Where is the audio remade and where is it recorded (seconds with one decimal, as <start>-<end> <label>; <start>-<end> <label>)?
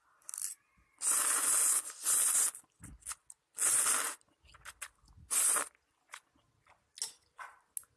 0.0-8.0 recorded